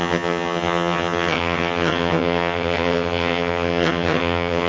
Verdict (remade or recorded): remade